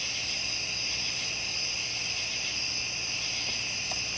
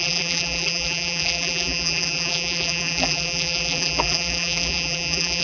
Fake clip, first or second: second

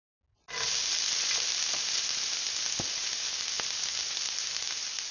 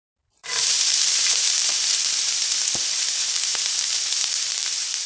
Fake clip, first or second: second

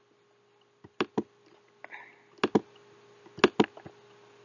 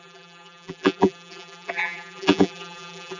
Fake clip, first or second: second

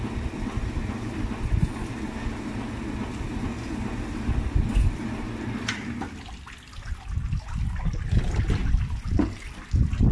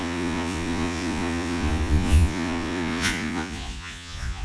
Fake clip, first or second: second